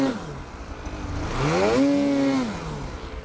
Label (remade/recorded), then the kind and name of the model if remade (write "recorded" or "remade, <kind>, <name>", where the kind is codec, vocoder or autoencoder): recorded